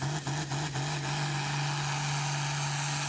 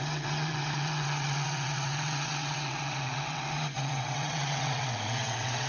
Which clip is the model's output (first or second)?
second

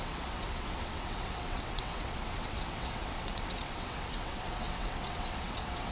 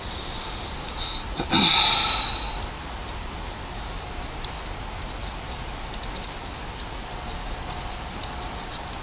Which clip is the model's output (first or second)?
first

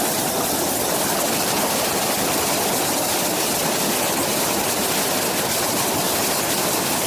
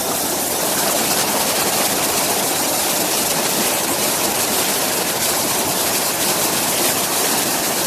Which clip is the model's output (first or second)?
second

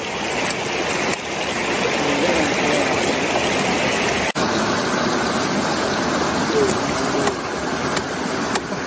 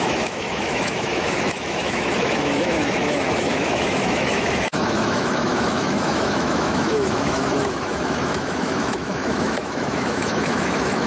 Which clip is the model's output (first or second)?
second